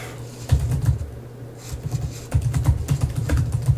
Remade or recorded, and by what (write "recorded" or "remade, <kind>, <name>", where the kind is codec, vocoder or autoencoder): recorded